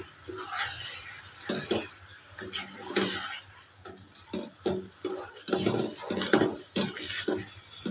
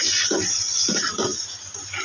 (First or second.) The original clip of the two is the first